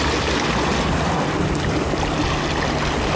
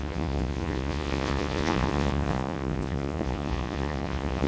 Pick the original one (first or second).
first